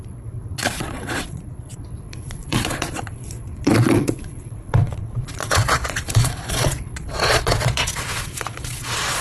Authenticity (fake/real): fake